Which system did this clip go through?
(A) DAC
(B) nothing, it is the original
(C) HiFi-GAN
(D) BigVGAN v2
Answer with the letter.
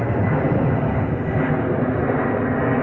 B